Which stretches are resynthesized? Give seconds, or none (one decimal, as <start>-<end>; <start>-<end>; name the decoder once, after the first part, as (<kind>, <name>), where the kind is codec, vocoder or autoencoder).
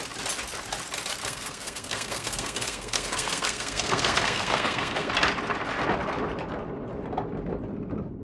1.2-5.1 (codec, SNAC)